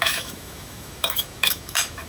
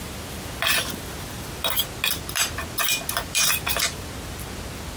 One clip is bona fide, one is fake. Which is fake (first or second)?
first